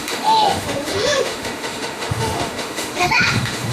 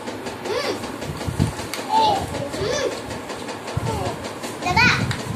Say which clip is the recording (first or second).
second